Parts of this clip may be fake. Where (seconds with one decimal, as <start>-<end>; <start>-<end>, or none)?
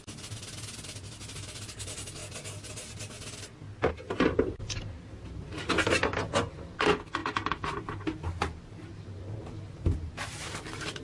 7.2-11.0